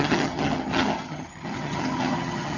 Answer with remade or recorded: remade